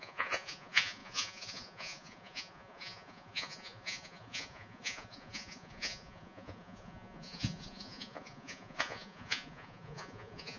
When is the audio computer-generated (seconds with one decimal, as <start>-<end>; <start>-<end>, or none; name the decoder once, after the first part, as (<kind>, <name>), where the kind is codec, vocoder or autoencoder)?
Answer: 0.0-10.6 (vocoder, Vocos)

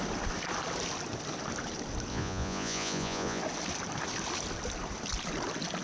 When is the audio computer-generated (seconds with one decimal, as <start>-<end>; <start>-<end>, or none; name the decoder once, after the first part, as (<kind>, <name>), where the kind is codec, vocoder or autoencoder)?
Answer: 2.1-3.4 (vocoder, Vocos)

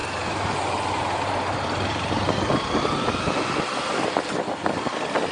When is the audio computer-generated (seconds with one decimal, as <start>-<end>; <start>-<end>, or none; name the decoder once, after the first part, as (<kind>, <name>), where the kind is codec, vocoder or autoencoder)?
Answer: none

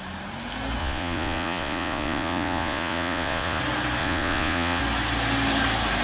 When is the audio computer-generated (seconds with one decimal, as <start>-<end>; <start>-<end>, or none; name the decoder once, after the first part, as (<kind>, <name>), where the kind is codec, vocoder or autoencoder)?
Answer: 0.8-3.6 (vocoder, Vocos); 4.0-4.8

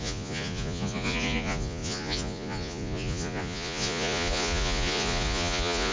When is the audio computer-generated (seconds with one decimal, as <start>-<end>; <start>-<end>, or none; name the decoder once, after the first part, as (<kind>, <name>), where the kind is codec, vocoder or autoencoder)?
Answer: 0.0-5.9 (vocoder, Vocos)

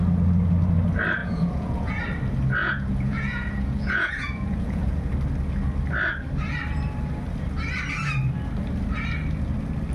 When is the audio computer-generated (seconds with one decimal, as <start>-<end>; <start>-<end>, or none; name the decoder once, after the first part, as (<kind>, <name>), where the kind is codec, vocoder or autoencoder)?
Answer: 1.2-2.0 (vocoder, Vocos); 2.6-5.1

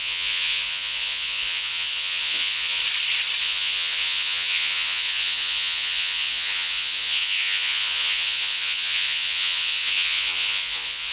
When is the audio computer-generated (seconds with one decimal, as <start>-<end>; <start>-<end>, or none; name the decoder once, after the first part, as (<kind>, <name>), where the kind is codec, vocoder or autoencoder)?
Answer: 0.0-2.8 (vocoder, Vocos); 3.4-11.1